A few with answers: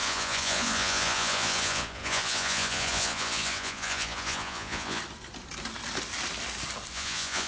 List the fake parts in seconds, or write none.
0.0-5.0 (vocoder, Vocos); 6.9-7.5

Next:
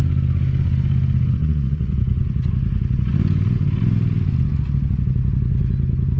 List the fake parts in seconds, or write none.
1.4-2.5 (vocoder, Vocos)

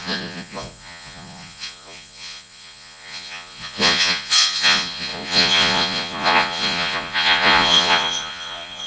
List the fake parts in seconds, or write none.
0.0-8.9 (vocoder, Vocos)